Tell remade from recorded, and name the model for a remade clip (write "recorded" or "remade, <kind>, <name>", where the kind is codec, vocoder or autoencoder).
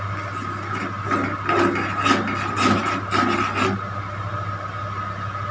recorded